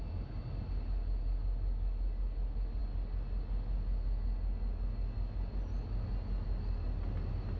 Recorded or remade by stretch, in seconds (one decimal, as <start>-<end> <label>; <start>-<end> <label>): 0.0-7.6 recorded